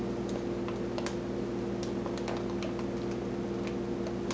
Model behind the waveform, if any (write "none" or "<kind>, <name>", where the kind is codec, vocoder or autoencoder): none